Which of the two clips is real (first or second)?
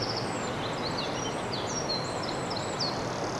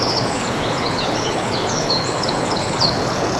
first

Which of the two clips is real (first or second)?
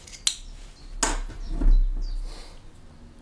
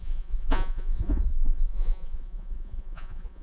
first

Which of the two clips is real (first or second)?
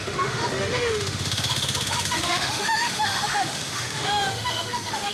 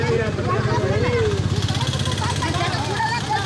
second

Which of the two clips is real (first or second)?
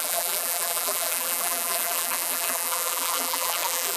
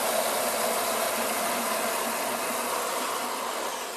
second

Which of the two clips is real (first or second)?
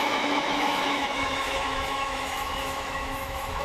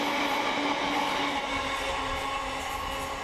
second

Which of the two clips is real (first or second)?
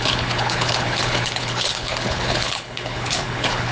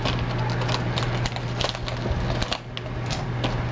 second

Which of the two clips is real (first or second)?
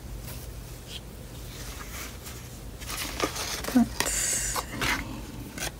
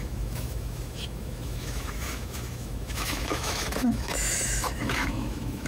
first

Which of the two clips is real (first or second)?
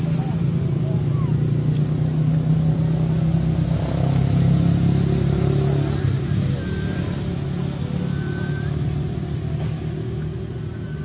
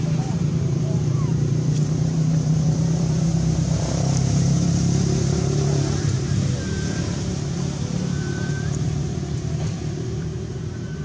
first